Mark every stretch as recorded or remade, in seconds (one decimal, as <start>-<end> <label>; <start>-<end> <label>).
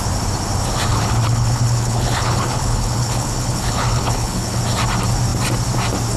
0.0-0.9 recorded; 0.9-4.6 remade; 4.6-6.2 recorded